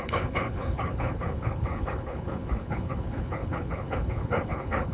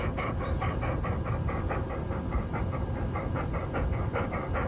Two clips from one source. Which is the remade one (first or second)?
first